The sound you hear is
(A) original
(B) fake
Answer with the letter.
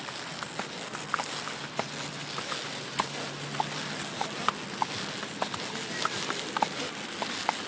A